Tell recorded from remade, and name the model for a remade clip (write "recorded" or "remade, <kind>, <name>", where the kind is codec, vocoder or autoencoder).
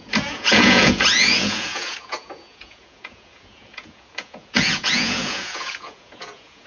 remade, vocoder, Vocos